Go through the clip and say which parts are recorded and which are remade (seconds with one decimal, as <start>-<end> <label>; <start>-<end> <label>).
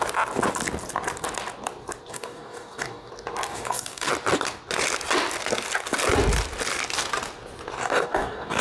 0.0-2.1 recorded; 2.1-3.1 remade; 3.1-3.5 recorded; 3.5-4.1 remade; 4.1-7.8 recorded; 7.8-8.6 remade